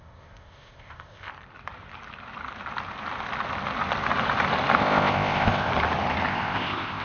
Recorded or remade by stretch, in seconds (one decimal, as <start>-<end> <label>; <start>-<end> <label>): 0.0-1.3 remade; 1.3-4.8 recorded; 4.8-5.7 remade; 5.7-6.3 recorded; 6.3-7.0 remade